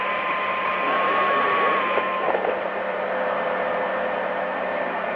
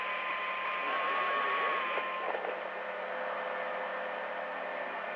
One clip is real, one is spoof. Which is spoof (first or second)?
first